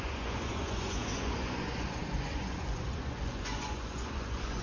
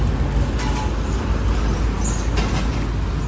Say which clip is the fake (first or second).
first